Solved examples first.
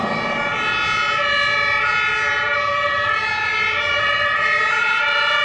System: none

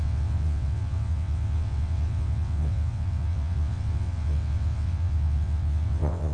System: vocoder, WaveNeXt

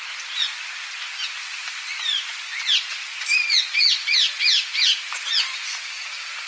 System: none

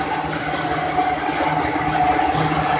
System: none